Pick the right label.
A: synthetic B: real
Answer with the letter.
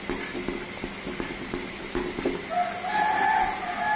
B